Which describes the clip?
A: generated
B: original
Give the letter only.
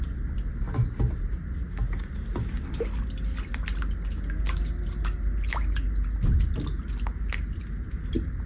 B